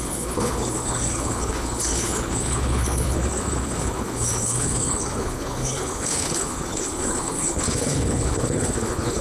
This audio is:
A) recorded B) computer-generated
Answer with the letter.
B